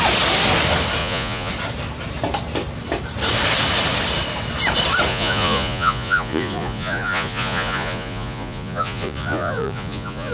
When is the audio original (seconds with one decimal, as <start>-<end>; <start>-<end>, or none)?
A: 0.0-1.0; 1.5-5.1